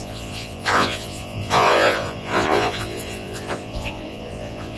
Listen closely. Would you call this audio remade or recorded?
remade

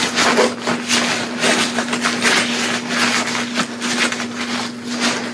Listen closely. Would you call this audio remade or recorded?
recorded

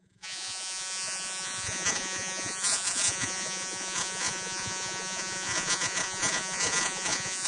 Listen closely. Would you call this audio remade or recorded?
remade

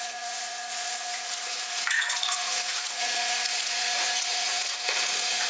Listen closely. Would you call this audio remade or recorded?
remade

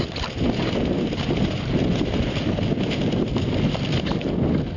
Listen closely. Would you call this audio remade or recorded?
recorded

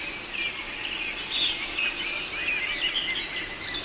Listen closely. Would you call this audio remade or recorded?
recorded